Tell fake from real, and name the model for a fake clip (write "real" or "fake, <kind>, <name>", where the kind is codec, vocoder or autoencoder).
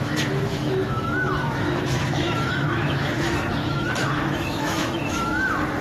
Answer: fake, autoencoder, DAC-VAE